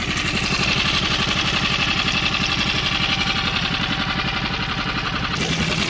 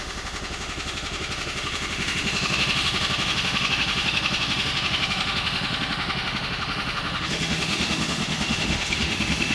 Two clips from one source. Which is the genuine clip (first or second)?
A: first